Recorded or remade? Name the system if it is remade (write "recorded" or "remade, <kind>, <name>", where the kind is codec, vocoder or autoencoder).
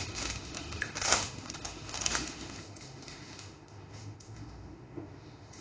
remade, autoencoder, DAC-VAE